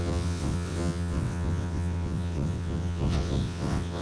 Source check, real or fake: fake